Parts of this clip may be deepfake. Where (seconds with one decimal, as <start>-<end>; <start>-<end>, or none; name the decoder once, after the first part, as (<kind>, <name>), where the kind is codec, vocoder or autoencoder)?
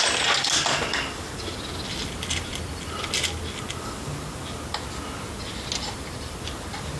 none